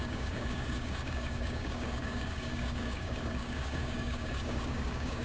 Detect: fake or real fake